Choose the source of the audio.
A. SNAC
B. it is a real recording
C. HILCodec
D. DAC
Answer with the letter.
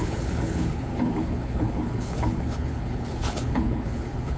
C